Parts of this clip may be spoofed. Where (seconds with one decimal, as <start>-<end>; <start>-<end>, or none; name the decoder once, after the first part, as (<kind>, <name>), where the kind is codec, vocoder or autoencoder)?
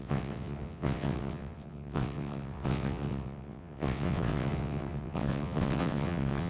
0.0-6.5 (vocoder, WaveNeXt)